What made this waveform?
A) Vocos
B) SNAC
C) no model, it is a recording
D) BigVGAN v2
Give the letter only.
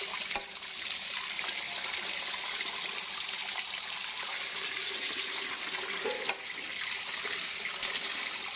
C